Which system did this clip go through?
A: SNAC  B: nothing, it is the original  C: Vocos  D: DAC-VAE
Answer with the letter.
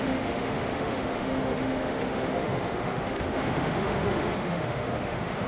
D